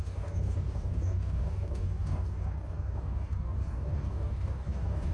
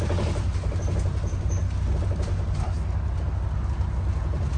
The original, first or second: second